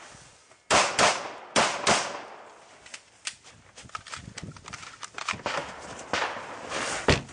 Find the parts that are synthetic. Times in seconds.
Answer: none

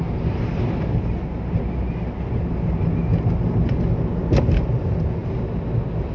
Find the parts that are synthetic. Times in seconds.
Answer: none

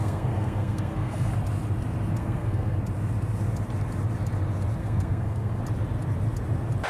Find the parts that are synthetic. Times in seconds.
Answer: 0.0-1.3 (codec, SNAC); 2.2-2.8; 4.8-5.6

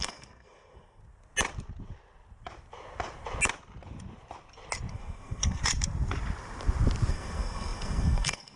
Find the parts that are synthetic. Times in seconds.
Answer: 0.0-1.0 (codec, SNAC); 4.9-5.6; 7.1-8.6

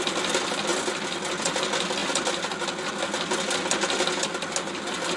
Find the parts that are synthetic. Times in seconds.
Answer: none